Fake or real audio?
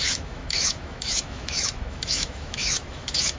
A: fake